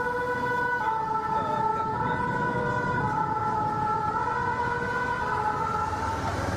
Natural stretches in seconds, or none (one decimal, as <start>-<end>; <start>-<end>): 0.0-6.6